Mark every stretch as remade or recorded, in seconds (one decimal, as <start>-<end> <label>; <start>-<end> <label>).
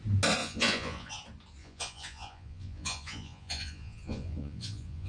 0.0-0.4 recorded; 0.4-1.1 remade; 1.1-1.6 recorded; 1.6-5.1 remade